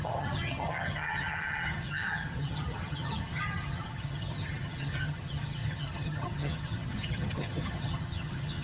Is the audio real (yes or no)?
no